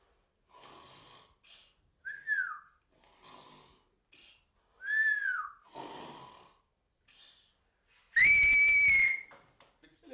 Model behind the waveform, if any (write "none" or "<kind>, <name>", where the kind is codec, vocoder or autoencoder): none